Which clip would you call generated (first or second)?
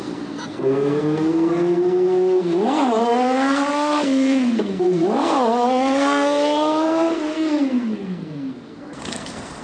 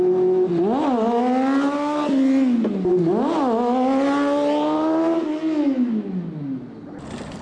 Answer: first